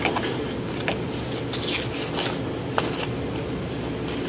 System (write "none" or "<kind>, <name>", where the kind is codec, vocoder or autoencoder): none